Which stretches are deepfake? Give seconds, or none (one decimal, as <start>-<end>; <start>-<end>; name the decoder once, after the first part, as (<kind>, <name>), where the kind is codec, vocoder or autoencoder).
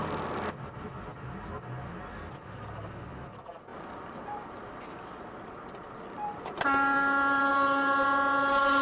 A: 1.1-2.3 (vocoder, BigVGAN v2); 3.7-7.4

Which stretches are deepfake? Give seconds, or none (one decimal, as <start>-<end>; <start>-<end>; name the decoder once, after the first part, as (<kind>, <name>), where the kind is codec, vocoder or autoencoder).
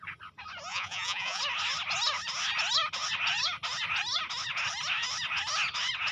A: 0.7-1.4 (vocoder, Vocos)